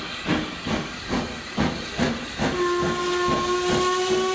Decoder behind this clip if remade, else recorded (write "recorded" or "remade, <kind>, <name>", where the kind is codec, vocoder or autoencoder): recorded